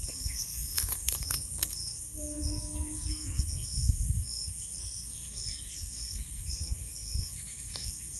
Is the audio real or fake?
fake